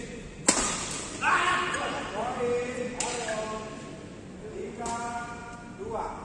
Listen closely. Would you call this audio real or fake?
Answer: real